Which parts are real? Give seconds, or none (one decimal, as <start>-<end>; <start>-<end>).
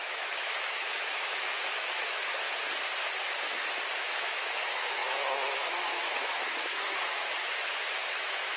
2.5-4.0